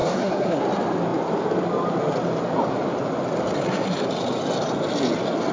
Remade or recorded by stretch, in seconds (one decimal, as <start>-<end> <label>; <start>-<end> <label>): 0.0-0.6 remade; 0.6-5.5 recorded